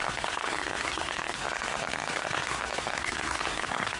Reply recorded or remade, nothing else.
remade